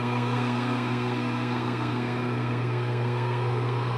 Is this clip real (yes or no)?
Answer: no